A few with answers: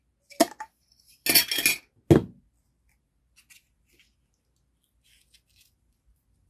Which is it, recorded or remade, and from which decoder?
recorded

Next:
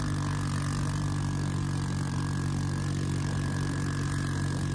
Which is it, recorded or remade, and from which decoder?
recorded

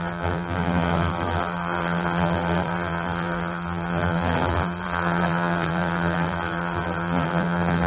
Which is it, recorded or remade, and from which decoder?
remade, vocoder, BigVGAN v2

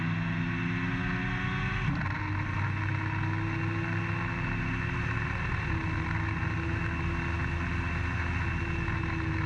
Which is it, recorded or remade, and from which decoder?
recorded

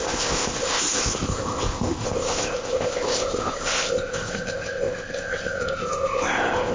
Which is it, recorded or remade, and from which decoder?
remade, codec, ZipCodec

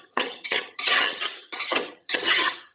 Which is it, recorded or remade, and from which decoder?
remade, vocoder, HiFi-GAN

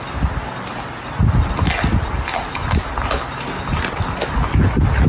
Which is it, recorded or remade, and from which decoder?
recorded